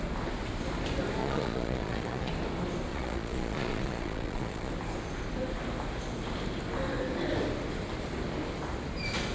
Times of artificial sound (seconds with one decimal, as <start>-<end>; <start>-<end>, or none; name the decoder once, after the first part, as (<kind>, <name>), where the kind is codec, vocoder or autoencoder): 1.2-2.3 (vocoder, Vocos); 2.9-4.7